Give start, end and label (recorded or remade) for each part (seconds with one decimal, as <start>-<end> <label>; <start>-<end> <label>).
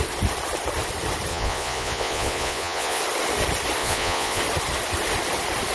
0.0-1.3 recorded; 1.3-3.0 remade; 3.0-3.8 recorded; 3.8-4.4 remade; 4.4-5.7 recorded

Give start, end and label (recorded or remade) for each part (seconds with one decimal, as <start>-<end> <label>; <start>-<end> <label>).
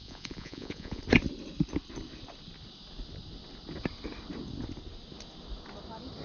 0.0-1.0 remade; 1.0-6.2 recorded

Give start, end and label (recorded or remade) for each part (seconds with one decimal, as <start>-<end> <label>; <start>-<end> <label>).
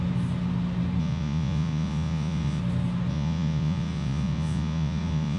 0.0-1.0 recorded; 1.0-2.6 remade; 2.6-3.1 recorded; 3.1-5.4 remade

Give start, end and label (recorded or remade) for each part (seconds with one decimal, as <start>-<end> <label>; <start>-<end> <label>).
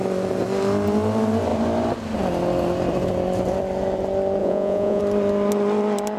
0.0-4.4 recorded; 4.4-5.0 remade; 5.0-6.2 recorded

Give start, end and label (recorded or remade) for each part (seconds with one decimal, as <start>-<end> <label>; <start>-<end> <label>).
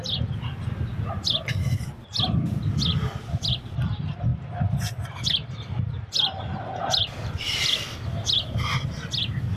0.0-9.6 recorded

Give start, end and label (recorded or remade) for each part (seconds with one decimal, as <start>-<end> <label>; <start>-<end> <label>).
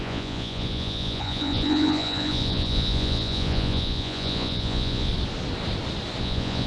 0.0-5.1 remade; 5.1-6.2 recorded; 6.2-6.7 remade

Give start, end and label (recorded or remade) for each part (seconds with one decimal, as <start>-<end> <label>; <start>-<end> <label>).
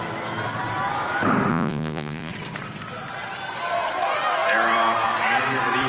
0.0-1.5 recorded; 1.5-2.3 remade; 2.3-5.9 recorded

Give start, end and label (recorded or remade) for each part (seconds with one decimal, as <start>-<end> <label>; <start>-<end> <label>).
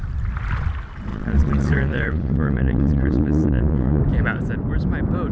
0.0-1.1 recorded; 1.1-4.0 remade; 4.0-5.3 recorded